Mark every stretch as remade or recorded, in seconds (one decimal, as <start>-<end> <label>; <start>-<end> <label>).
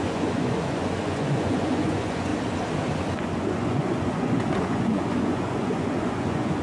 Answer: 0.0-2.3 remade; 2.3-3.1 recorded; 3.1-6.6 remade